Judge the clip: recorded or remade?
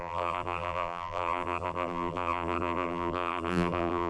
remade